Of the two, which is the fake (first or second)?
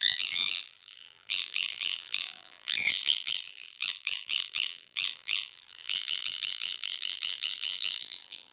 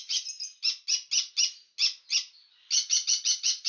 first